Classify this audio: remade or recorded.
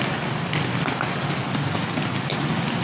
recorded